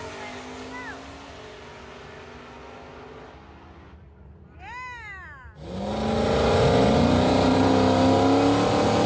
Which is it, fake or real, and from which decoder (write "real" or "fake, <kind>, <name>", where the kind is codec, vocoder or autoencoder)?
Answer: real